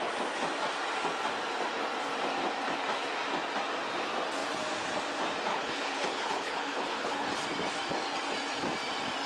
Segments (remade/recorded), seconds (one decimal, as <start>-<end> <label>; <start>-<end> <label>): 0.0-5.5 recorded; 5.5-7.3 remade; 7.3-9.3 recorded